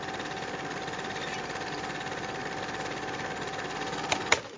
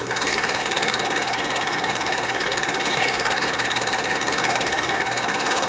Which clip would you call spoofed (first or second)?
second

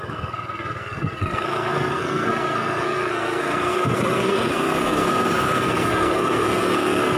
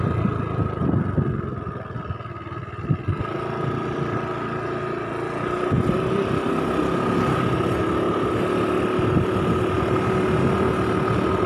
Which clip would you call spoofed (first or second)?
first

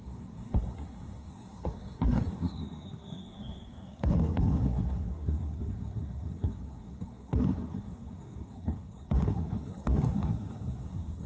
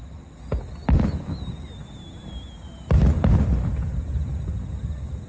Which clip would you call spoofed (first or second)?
first